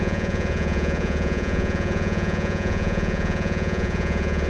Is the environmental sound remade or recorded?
remade